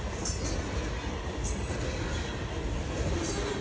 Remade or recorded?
recorded